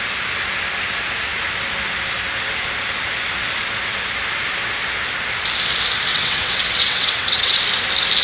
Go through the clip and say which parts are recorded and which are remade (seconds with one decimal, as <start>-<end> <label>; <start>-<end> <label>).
0.0-6.1 recorded; 6.1-7.6 remade; 7.6-8.2 recorded